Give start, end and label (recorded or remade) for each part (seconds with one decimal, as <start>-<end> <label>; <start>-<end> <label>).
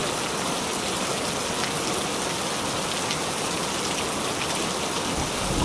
0.0-5.6 recorded